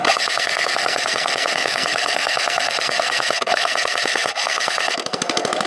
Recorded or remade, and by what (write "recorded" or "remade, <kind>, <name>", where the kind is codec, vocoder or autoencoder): remade, codec, SNAC